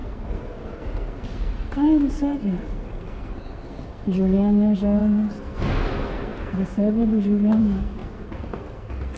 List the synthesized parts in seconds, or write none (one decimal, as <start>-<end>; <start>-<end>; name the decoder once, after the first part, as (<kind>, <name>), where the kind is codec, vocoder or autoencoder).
0.0-9.2 (codec, SNAC)

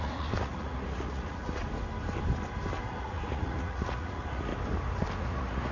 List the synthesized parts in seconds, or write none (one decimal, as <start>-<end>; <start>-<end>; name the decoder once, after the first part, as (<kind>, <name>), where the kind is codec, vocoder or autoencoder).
0.0-1.6 (vocoder, Vocos); 3.0-4.5; 5.2-5.7

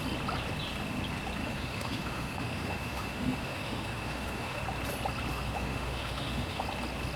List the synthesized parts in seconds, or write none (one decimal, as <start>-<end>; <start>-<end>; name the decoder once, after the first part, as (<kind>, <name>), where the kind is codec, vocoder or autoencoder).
1.4-4.6 (autoencoder, DAC-VAE); 5.3-6.6

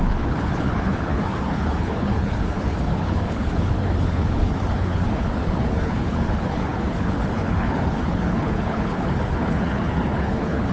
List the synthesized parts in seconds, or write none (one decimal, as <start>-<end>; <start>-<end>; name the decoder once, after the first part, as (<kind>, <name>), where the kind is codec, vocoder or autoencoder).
0.0-10.7 (codec, HILCodec)